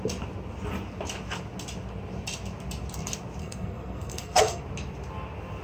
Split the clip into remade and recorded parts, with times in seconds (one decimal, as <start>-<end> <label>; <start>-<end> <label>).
0.0-3.4 recorded; 3.4-4.6 remade; 4.6-5.6 recorded